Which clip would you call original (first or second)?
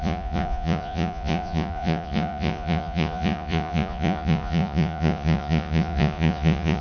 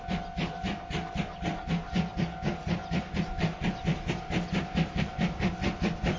second